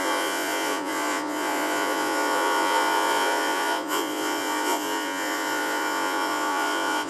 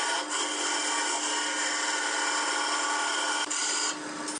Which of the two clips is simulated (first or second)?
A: first